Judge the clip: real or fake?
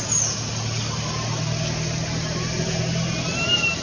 real